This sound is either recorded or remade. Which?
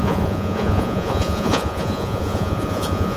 remade